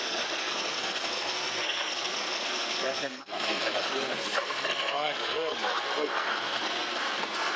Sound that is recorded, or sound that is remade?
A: remade